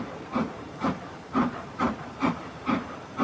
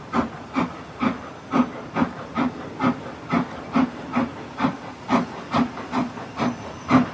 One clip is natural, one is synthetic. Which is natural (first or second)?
second